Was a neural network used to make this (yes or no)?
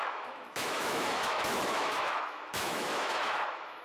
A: yes